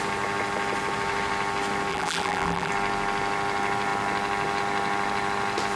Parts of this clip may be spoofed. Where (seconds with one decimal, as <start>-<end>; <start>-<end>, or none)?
1.9-2.7

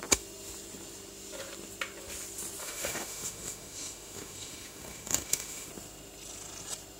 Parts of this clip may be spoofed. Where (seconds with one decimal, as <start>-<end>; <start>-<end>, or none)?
2.6-5.7

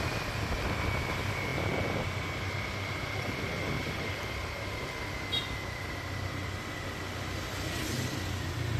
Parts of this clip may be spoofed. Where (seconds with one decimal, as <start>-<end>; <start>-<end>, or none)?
none

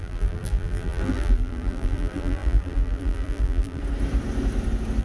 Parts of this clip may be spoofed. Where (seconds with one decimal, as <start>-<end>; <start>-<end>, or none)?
0.0-3.8

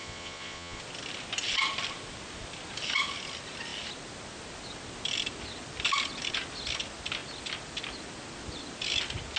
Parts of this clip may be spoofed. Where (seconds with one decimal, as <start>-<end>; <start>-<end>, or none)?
0.0-0.8

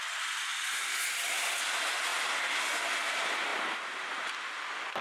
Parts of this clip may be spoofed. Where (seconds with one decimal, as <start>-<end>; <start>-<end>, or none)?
0.5-1.6

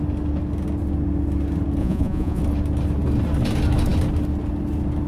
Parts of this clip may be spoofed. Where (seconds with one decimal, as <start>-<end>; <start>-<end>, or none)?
1.8-2.4